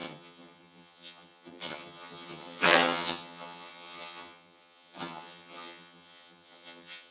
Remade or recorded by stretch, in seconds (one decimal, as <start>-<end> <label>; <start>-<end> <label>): 0.0-7.1 remade

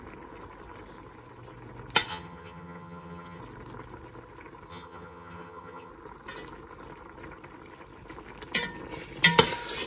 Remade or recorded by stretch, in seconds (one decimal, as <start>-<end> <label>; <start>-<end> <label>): 0.0-2.1 recorded; 2.1-3.4 remade; 3.4-4.7 recorded; 4.7-5.9 remade; 5.9-9.9 recorded

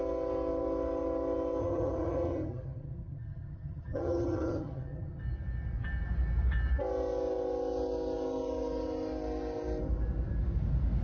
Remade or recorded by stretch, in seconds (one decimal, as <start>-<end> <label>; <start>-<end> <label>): 0.0-1.6 recorded; 1.6-5.2 remade; 5.2-11.0 recorded

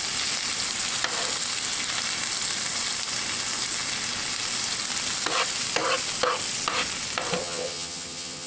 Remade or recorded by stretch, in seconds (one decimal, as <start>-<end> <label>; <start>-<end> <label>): 0.0-7.4 recorded; 7.4-8.5 remade